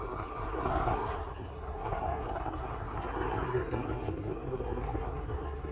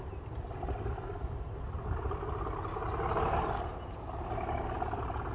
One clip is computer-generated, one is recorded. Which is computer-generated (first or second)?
first